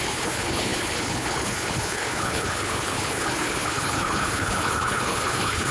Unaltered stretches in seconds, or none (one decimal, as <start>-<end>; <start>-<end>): none